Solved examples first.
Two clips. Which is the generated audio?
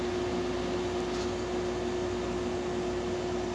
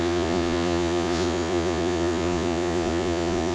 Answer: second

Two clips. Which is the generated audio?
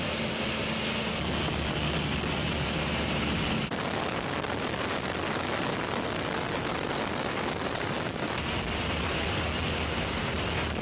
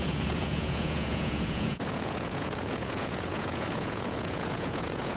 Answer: second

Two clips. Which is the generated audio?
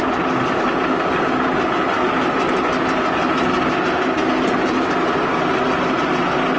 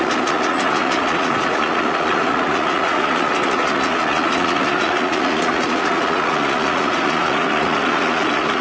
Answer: second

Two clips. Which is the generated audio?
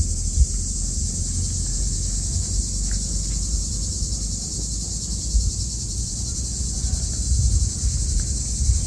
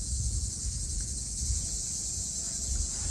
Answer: second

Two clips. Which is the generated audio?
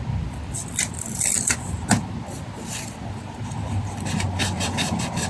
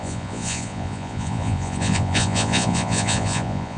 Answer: second